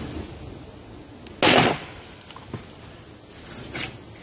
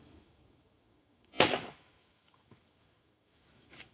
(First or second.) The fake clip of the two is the second